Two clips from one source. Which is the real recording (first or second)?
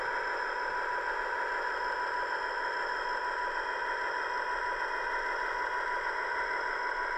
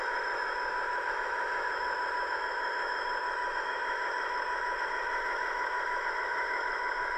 first